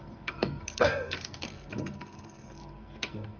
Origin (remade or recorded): remade